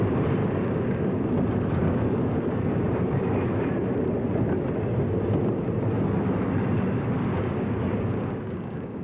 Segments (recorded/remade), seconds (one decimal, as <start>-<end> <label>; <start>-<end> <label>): 0.0-0.4 recorded; 0.4-1.2 remade; 1.2-1.8 recorded; 1.8-2.9 remade; 2.9-7.3 recorded; 7.3-9.0 remade